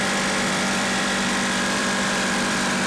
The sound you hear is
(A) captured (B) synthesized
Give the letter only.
B